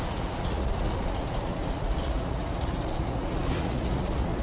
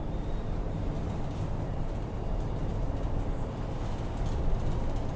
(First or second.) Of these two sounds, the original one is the second